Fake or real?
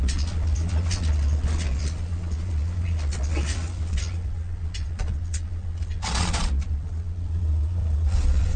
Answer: fake